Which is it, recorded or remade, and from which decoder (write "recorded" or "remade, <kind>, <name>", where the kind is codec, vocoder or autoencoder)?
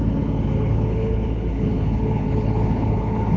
remade, codec, HILCodec